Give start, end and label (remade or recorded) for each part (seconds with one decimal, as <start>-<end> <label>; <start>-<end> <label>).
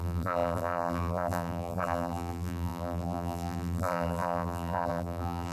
0.0-5.5 remade